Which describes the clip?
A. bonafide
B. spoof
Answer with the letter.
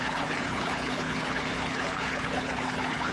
B